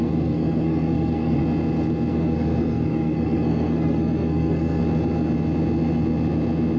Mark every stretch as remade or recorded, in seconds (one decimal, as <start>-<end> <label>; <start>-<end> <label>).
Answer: 0.0-1.4 remade; 1.4-2.1 recorded; 2.1-4.8 remade; 4.8-6.8 recorded